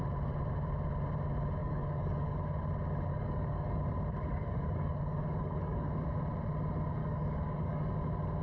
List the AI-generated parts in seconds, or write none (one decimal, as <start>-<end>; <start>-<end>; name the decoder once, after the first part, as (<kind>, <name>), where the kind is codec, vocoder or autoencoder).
1.6-2.6 (codec, DAC); 3.1-3.8; 4.4-5.9; 7.0-8.0